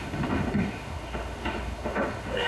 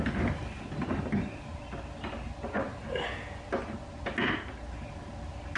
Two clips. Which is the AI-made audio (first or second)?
first